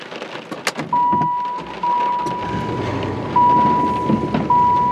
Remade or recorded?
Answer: recorded